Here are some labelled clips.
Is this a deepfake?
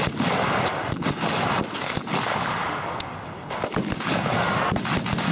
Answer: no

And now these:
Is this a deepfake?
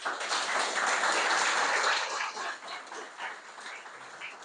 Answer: no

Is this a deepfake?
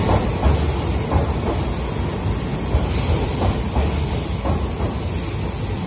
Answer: no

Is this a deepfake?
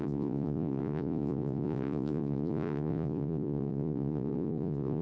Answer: yes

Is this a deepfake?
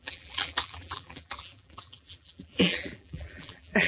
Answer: yes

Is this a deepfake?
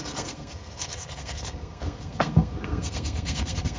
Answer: yes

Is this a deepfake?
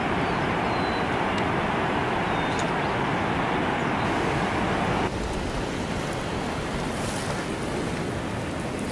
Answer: no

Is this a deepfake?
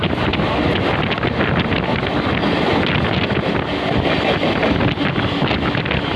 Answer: no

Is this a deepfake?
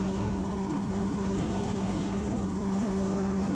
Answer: yes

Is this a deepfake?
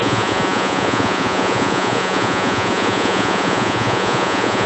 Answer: yes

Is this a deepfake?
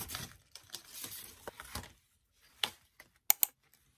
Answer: no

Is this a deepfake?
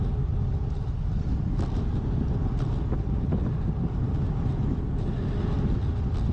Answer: no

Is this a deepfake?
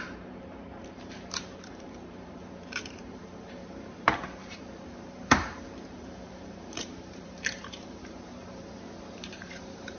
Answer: yes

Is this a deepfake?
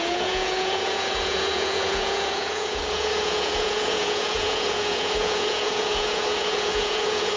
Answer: yes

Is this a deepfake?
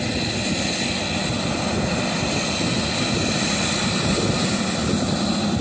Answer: no